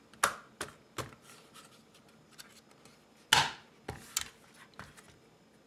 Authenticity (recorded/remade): recorded